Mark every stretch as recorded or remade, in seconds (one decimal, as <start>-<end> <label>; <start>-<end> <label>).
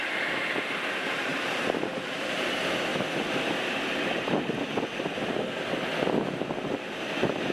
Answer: 0.0-1.3 recorded; 1.3-2.4 remade; 2.4-7.5 recorded